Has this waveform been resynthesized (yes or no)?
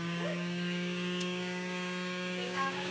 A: yes